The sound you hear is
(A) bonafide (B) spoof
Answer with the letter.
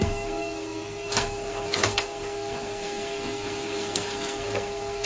B